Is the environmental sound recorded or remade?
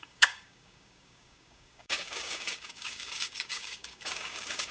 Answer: remade